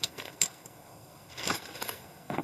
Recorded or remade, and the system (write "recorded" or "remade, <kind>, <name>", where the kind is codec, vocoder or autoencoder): remade, codec, SNAC